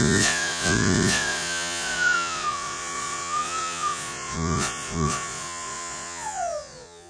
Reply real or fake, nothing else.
fake